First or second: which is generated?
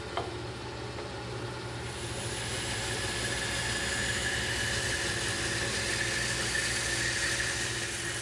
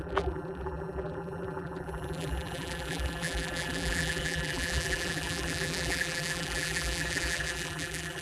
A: second